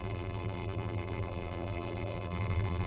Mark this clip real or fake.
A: fake